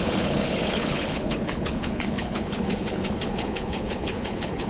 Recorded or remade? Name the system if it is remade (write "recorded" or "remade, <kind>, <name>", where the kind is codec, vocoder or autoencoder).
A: remade, codec, HILCodec